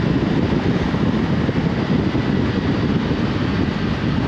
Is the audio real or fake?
real